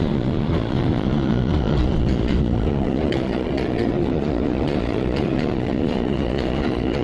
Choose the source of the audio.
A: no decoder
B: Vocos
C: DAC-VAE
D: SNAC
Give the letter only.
B